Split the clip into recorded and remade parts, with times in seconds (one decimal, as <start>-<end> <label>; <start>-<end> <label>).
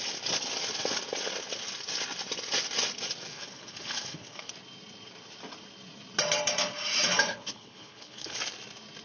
0.0-3.3 recorded; 3.3-4.5 remade; 4.5-7.3 recorded; 7.3-8.4 remade; 8.4-9.0 recorded